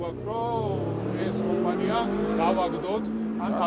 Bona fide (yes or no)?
yes